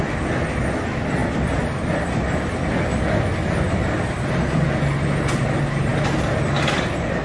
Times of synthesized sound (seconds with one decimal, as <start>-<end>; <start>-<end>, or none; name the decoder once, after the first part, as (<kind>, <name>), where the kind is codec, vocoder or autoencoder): none